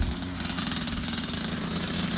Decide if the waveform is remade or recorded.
recorded